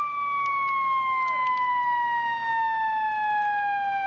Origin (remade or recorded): recorded